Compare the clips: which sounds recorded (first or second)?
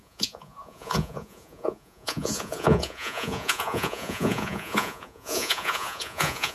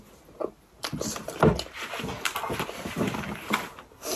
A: second